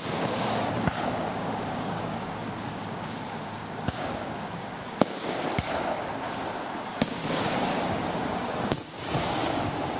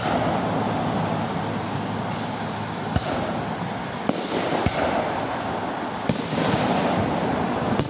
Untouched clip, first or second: second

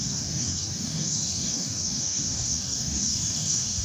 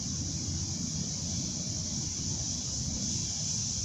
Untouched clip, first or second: second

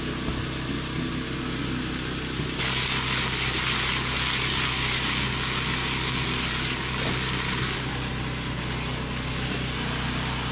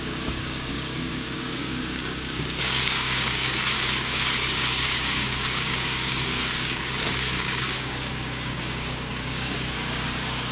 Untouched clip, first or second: first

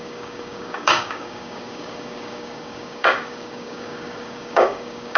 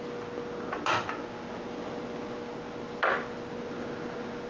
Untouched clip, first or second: second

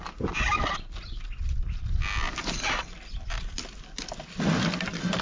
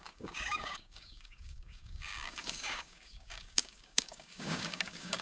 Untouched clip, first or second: first